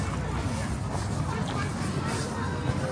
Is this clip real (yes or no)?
yes